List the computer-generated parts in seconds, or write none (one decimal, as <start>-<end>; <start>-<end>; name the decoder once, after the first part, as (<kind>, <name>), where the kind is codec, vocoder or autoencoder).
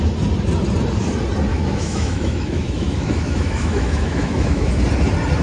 1.5-4.7 (autoencoder, DAC-VAE)